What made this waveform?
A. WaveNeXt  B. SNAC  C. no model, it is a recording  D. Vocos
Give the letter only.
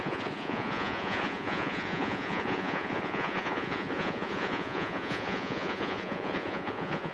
D